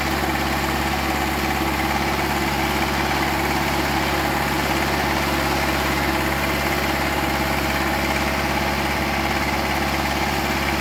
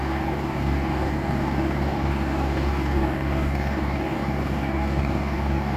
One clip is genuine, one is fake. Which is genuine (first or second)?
first